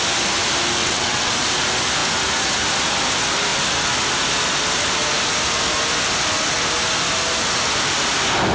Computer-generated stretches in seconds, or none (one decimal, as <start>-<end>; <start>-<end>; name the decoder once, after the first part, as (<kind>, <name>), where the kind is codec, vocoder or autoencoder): 0.8-1.3 (vocoder, WaveNeXt)